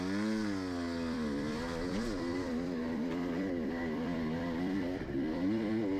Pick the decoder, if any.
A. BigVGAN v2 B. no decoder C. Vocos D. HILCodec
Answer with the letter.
A